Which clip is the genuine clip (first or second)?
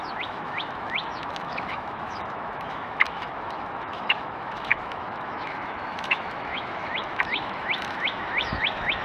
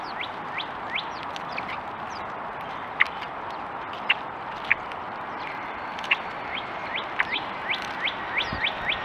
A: second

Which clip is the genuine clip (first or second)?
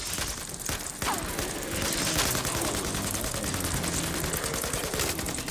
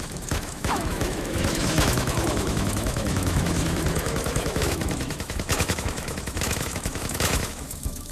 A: first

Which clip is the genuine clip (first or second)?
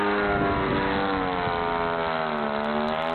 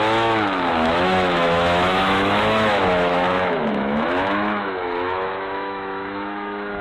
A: first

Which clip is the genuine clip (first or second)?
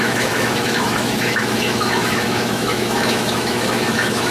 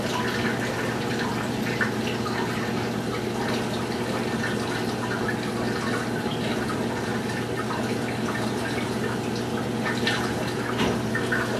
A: second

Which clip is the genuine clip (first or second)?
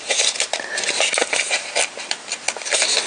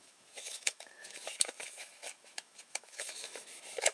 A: first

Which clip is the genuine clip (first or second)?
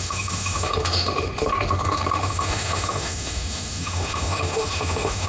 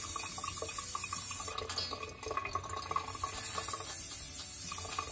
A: second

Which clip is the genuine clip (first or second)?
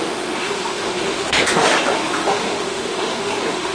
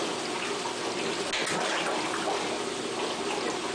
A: second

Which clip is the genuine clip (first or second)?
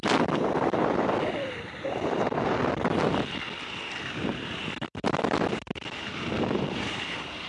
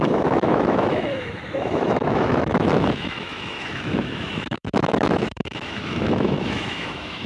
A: first